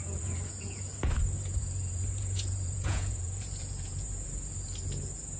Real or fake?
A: fake